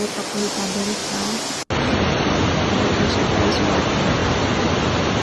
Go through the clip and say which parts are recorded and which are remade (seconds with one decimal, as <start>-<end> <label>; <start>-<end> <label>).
0.0-5.2 recorded